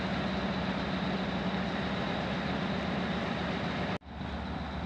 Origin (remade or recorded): recorded